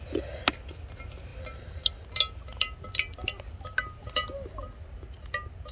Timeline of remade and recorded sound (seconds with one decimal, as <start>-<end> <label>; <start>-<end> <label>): 0.0-5.7 recorded